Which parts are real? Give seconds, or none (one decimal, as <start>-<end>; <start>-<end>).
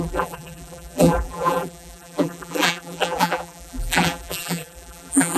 none